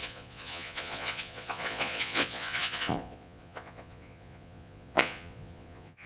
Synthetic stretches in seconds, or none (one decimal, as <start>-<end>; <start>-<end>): 0.0-6.1